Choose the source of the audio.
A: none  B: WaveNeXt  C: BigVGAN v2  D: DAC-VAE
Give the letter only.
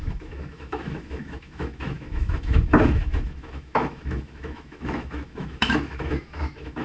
D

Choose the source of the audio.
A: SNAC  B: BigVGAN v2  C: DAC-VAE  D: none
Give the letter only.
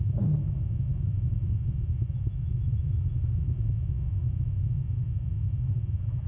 D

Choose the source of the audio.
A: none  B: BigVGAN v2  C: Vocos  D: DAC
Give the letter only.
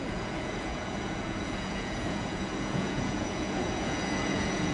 C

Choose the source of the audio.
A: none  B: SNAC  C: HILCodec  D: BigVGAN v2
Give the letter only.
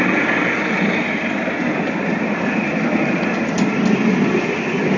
A